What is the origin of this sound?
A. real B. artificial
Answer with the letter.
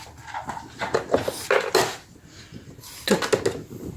A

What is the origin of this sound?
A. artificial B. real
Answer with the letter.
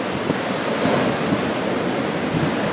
B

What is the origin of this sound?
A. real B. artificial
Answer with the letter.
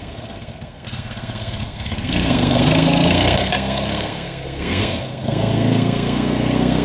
B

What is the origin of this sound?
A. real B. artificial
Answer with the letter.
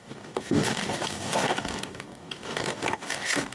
B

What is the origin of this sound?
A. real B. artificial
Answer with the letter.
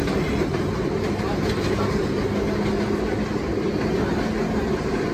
A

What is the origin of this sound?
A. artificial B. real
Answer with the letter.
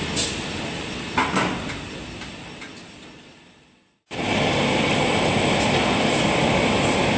B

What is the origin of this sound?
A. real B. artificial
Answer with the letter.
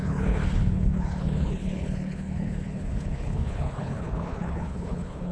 B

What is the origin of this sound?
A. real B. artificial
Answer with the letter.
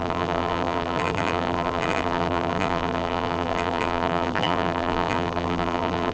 B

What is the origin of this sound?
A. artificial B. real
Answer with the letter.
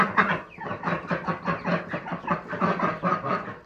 B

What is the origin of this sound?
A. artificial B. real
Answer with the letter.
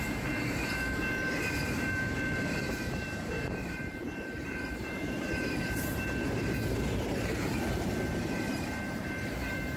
A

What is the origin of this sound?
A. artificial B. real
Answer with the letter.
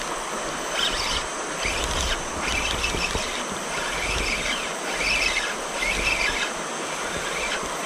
B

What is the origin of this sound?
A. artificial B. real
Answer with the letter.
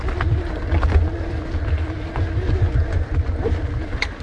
B